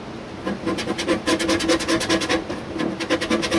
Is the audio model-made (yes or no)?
no